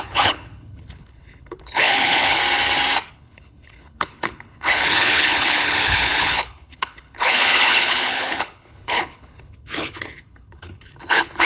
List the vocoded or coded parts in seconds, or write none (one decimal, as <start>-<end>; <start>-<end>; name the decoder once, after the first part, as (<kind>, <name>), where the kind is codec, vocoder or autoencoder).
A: 0.0-2.4 (codec, HILCodec); 3.1-11.4